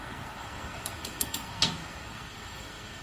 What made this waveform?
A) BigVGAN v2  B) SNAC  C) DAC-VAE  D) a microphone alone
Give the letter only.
B